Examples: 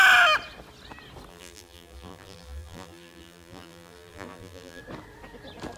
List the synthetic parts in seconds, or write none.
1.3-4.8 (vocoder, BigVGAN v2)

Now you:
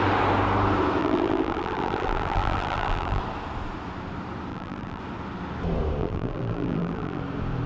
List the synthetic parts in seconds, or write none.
1.0-3.2 (vocoder, BigVGAN v2); 4.5-5.0; 6.0-7.2

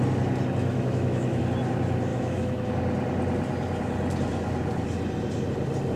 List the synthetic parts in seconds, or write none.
0.6-1.4 (autoencoder, DAC-VAE); 2.1-2.7

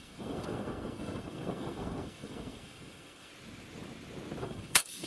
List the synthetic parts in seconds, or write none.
0.0-3.3 (codec, SNAC); 4.4-5.1

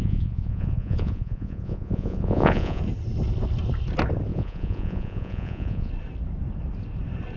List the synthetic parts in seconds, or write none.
0.0-2.8 (vocoder, Vocos); 4.3-5.9